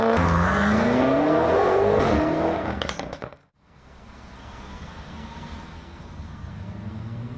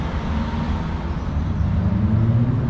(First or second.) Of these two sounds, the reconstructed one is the first